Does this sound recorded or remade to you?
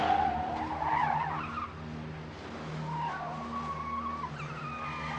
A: recorded